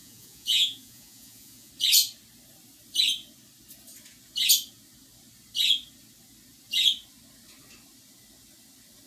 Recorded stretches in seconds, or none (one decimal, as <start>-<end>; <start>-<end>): 1.7-9.1